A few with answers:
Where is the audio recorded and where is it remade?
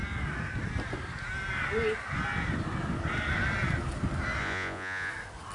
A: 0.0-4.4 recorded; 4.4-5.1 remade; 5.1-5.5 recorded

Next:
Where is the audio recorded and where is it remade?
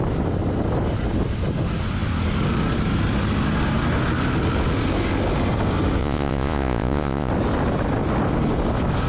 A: 0.0-6.0 recorded; 6.0-7.3 remade; 7.3-9.1 recorded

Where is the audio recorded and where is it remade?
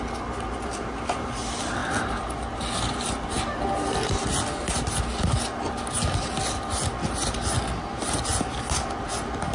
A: 0.0-9.5 recorded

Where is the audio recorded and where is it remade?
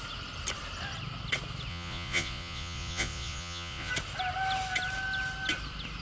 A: 0.0-1.7 recorded; 1.7-3.9 remade; 3.9-6.0 recorded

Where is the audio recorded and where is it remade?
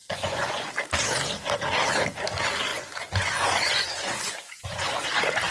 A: 0.0-0.7 remade; 0.7-2.7 recorded; 2.7-4.9 remade; 4.9-5.5 recorded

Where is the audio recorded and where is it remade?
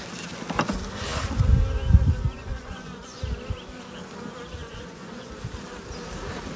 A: 0.0-2.4 recorded; 2.4-3.2 remade; 3.2-4.6 recorded; 4.6-5.3 remade; 5.3-6.6 recorded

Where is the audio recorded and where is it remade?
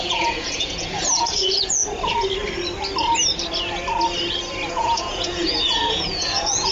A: 0.0-1.8 remade; 1.8-4.7 recorded; 4.7-6.7 remade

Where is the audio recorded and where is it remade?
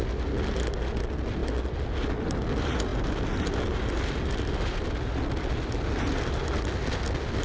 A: 0.0-7.4 recorded